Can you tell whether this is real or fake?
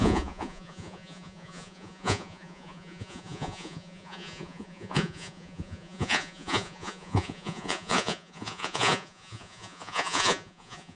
fake